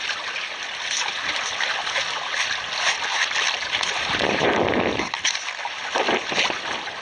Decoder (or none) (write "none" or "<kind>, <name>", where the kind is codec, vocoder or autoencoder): none